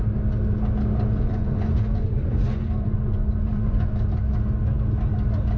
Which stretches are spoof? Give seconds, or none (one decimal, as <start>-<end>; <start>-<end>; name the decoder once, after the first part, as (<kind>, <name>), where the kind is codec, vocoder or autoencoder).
1.3-3.9 (vocoder, Vocos)